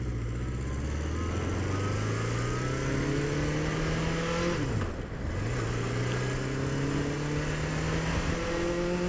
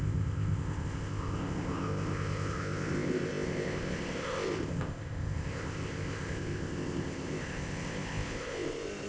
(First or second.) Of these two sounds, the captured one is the first